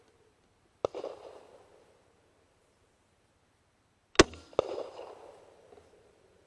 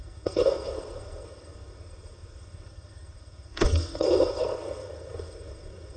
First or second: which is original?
first